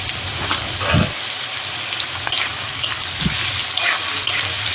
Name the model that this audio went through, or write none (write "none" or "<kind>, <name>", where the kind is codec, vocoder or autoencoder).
none